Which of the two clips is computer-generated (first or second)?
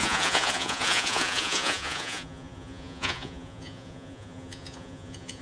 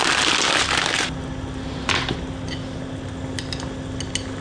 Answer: first